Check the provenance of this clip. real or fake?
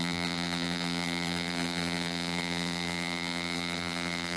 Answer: fake